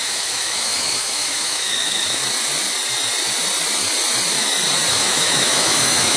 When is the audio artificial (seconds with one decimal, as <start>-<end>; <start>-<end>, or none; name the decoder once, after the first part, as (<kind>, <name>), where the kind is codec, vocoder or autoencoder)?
0.0-2.2 (autoencoder, DAC-VAE); 4.9-6.2